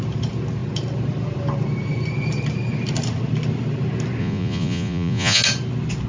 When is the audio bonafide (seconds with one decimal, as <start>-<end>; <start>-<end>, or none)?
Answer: 0.0-4.2; 5.4-6.1